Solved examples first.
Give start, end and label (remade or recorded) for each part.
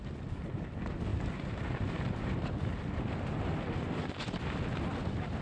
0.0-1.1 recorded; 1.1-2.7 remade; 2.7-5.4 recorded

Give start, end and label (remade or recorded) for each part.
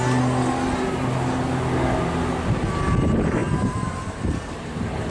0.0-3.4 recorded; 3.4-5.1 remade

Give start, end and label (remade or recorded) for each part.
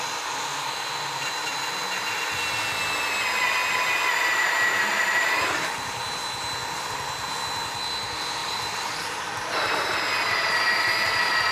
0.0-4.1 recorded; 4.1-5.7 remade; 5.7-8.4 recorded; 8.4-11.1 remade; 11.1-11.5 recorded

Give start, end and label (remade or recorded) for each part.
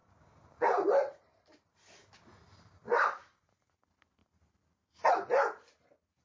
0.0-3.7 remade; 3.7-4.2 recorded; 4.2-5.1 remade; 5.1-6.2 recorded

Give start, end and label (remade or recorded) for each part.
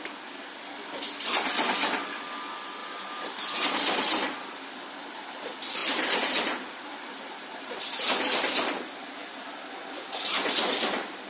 0.0-2.8 recorded; 2.8-4.9 remade; 4.9-5.8 recorded; 5.8-7.7 remade; 7.7-11.3 recorded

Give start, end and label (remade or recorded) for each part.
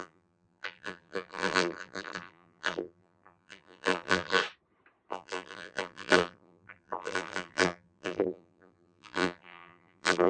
0.0-4.4 remade; 4.4-5.1 recorded; 5.1-10.3 remade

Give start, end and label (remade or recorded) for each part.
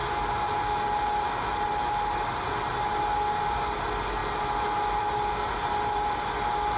0.0-6.8 recorded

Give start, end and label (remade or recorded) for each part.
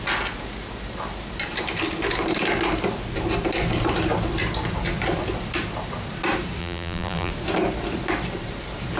0.0-6.6 recorded; 6.6-7.3 remade; 7.3-9.0 recorded